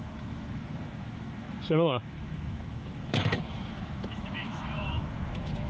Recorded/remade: remade